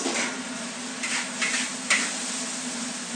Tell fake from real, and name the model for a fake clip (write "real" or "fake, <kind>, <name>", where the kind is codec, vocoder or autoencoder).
real